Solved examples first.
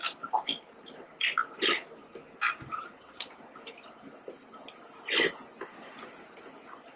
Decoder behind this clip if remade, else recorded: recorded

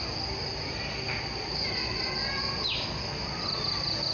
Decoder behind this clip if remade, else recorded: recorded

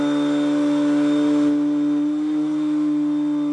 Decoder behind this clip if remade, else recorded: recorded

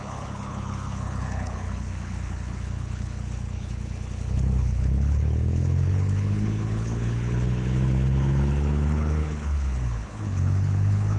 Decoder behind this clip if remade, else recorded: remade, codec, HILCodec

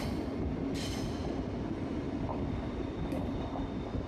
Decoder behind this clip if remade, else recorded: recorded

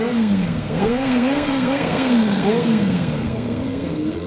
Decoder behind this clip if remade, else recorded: remade, codec, SNAC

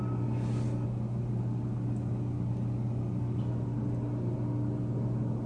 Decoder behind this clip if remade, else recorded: recorded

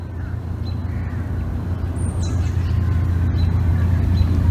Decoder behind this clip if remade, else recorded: recorded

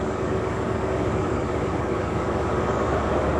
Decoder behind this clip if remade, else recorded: remade, codec, DAC